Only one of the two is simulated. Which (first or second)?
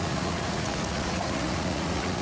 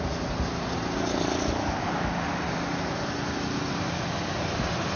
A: first